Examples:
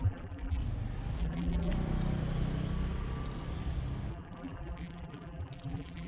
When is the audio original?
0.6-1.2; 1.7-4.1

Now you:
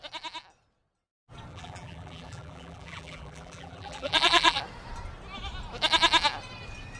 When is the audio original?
0.0-1.5; 4.6-7.0

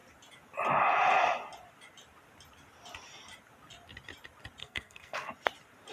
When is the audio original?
0.0-4.6; 5.3-5.9